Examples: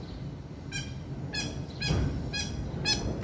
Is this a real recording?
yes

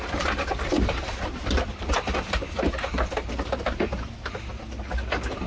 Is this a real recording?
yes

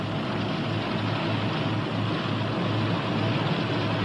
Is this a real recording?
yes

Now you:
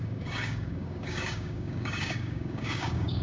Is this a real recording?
no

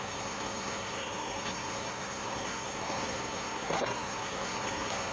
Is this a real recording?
no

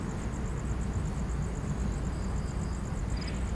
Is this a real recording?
yes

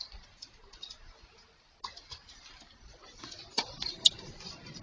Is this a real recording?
yes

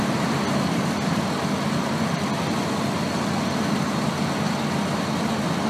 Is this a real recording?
yes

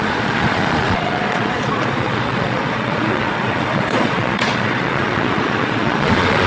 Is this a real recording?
no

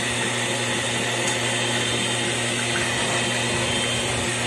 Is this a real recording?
yes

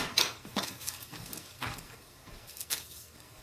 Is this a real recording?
no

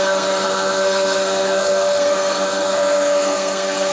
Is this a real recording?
no